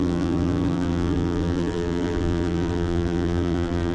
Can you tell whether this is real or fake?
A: fake